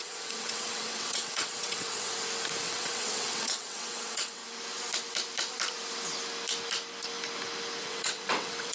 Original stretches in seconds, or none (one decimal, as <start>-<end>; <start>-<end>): 2.1-2.6; 4.4-7.8